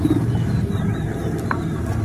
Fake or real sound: real